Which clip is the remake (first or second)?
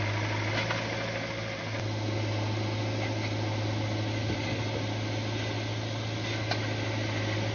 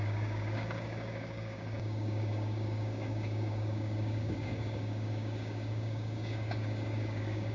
second